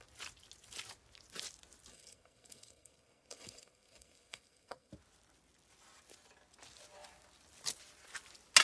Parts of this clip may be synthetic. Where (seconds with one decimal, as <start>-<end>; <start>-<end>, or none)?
1.9-4.9

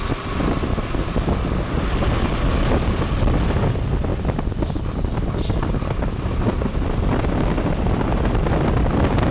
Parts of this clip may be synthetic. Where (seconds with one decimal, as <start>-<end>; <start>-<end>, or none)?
none

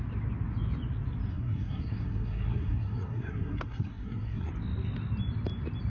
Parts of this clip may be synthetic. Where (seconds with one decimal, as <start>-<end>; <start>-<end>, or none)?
1.3-4.5

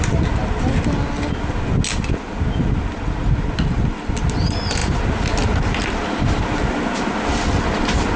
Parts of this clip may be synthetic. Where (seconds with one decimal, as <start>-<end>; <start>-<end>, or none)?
none

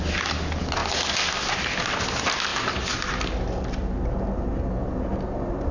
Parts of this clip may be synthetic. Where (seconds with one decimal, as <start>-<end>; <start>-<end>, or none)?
none

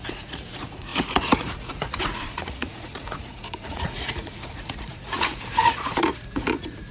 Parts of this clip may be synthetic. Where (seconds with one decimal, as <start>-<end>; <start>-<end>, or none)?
0.0-6.9

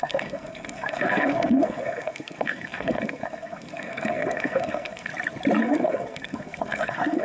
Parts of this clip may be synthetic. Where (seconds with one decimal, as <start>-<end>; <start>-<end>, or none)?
0.0-5.1; 5.6-7.2

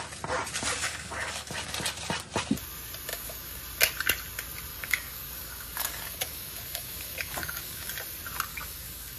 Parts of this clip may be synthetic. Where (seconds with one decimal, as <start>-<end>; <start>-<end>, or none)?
0.8-1.5; 3.1-3.6; 4.7-7.9; 8.5-9.2